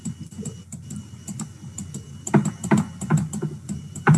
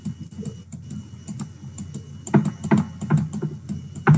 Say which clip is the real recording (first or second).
second